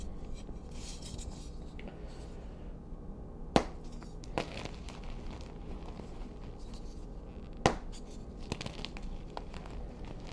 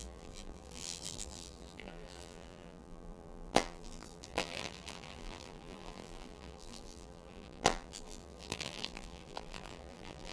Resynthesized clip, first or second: second